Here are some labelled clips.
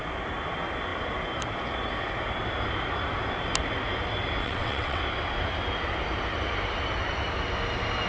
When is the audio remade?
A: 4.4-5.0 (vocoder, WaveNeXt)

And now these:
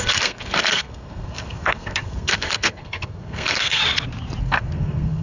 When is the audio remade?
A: 0.0-3.8 (codec, SNAC); 4.4-5.2

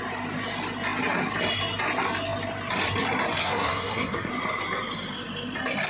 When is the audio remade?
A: 3.4-4.3 (codec, SNAC)

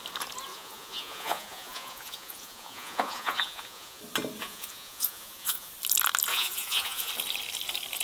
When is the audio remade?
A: 0.5-4.0 (vocoder, Vocos); 4.4-5.7; 6.3-7.1

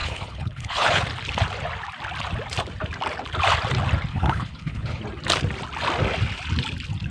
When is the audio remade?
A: 0.0-1.0 (codec, HILCodec); 4.1-5.0

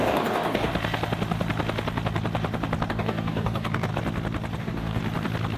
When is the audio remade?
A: 0.0-0.7 (codec, DAC); 2.9-3.9; 4.6-5.0

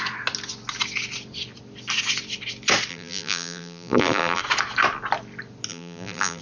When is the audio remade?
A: 2.9-4.4 (vocoder, BigVGAN v2); 5.7-6.4